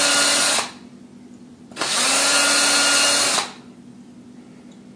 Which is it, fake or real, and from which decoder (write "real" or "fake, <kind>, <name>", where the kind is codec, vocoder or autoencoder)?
real